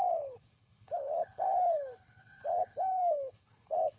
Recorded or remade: remade